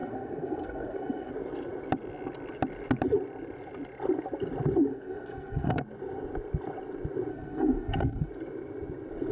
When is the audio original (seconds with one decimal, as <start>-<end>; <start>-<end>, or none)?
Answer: 1.3-4.9; 5.8-7.3; 8.3-9.3